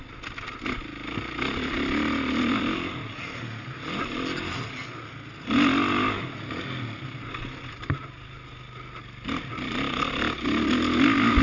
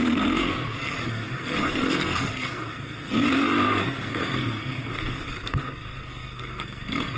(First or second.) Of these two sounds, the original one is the first